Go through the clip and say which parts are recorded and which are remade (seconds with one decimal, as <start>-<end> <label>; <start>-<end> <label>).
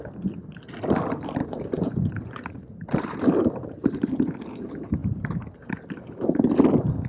0.0-1.4 recorded; 1.4-3.4 remade; 3.4-5.0 recorded; 5.0-6.5 remade; 6.5-7.1 recorded